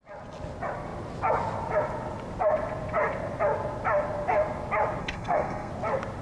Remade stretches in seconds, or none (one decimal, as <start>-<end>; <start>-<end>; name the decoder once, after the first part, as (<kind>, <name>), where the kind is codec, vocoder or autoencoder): 5.0-5.7 (codec, SNAC)